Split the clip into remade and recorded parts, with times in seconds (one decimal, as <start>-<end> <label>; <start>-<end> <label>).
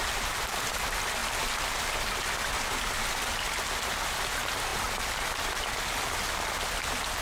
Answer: 0.0-7.2 recorded